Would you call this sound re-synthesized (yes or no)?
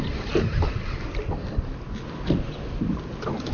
no